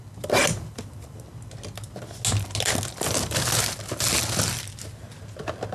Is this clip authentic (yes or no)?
yes